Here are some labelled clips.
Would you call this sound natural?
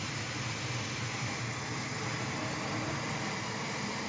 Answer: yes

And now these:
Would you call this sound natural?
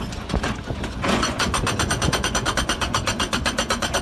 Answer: no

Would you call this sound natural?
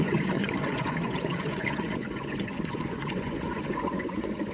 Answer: no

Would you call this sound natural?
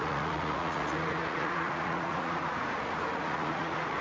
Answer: no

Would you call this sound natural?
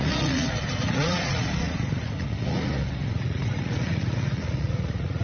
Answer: no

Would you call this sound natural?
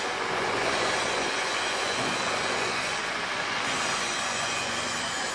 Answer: no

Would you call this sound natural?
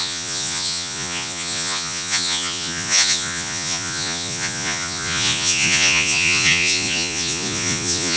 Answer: no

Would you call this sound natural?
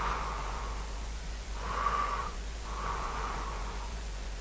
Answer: no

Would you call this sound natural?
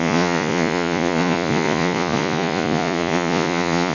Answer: no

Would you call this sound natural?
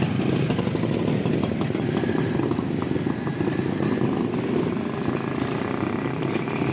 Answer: yes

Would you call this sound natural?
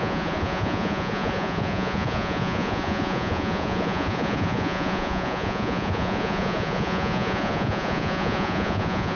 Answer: no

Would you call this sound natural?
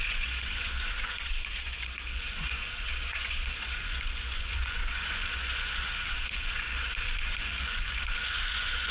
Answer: no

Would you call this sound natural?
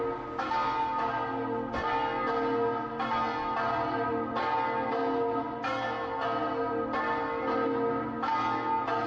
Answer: yes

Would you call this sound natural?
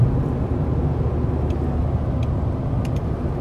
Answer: yes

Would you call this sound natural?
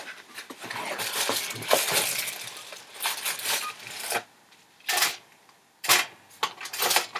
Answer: yes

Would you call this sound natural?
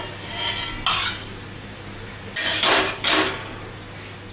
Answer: yes